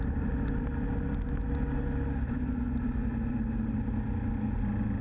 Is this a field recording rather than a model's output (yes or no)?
yes